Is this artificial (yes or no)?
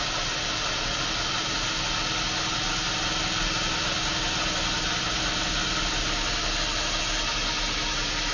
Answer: no